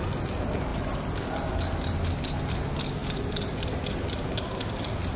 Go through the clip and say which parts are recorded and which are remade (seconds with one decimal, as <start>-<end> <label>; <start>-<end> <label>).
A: 0.0-5.2 recorded